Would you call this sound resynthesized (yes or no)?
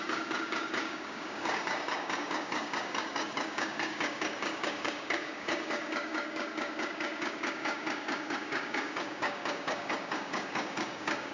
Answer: yes